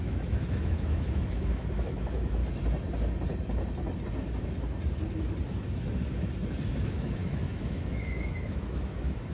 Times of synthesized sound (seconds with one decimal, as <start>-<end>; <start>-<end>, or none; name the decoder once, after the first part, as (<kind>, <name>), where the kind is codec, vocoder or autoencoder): 0.0-2.4 (autoencoder, DAC-VAE); 6.7-9.3